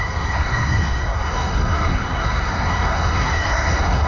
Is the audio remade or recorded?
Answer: remade